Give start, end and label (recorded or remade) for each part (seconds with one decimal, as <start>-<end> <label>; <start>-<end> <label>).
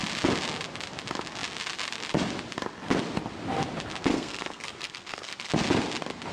0.0-4.1 recorded; 4.1-5.5 remade; 5.5-6.3 recorded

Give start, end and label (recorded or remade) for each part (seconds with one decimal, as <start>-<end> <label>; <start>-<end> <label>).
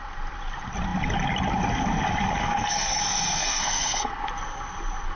0.0-2.4 recorded; 2.4-3.0 remade; 3.0-3.4 recorded; 3.4-4.1 remade; 4.1-5.2 recorded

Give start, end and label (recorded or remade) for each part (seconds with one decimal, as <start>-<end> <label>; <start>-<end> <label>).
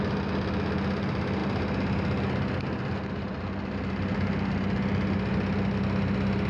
0.0-6.5 recorded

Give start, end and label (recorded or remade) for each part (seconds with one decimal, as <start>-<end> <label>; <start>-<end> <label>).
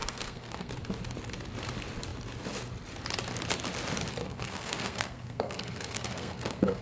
0.0-0.7 remade; 0.7-4.2 recorded; 4.2-6.8 remade